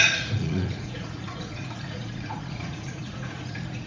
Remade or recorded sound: remade